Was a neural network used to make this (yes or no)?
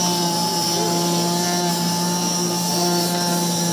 no